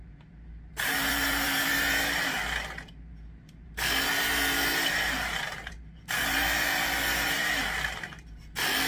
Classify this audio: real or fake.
fake